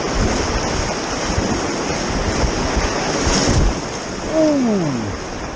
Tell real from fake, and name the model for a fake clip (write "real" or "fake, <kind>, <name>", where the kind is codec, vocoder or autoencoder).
real